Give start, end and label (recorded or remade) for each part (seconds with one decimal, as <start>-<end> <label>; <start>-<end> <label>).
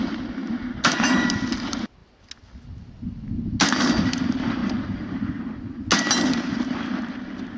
0.0-0.4 recorded; 0.4-1.4 remade; 1.4-4.6 recorded; 4.6-5.4 remade; 5.4-7.6 recorded